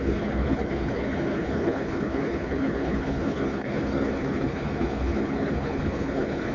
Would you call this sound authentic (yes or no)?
no